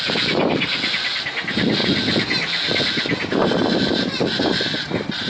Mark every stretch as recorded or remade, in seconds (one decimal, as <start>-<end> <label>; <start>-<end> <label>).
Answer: 0.0-5.3 recorded